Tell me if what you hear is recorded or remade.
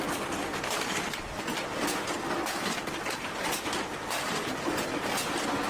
recorded